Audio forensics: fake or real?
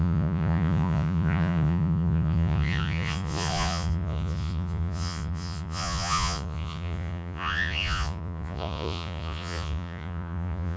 fake